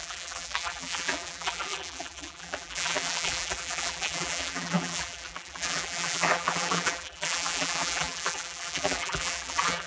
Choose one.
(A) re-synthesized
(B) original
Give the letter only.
A